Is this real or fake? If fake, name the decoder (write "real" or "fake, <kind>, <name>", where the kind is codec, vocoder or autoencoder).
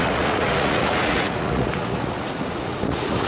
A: fake, vocoder, Vocos